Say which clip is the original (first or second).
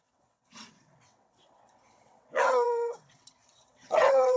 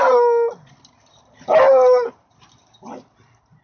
second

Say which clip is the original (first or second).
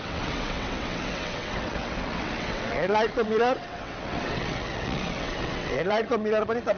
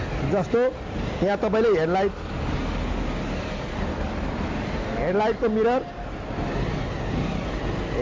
second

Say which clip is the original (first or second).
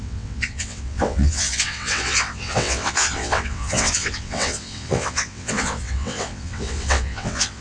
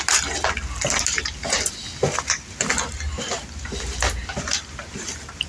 second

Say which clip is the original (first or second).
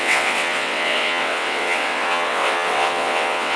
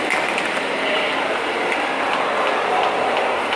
second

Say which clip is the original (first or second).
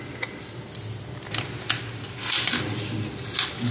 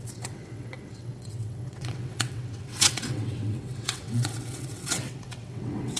first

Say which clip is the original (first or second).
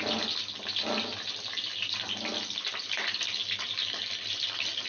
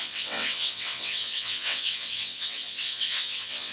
first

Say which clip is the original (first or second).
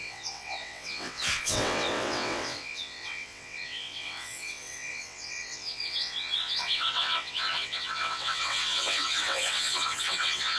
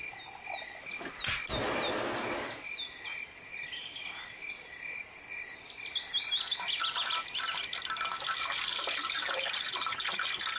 second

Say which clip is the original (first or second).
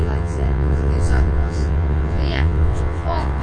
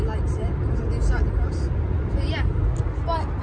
second